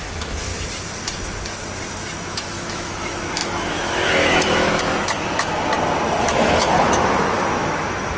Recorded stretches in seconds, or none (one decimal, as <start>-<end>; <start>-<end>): 0.5-2.2; 5.7-6.2

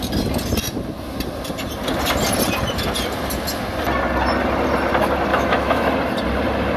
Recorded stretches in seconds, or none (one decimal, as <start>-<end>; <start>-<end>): 0.0-5.3; 5.9-6.8